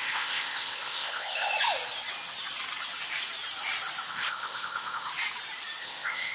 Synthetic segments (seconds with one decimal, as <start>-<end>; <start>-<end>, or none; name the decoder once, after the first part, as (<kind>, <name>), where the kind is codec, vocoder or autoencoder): 0.0-1.5 (codec, ZipCodec); 4.1-5.1; 5.8-6.3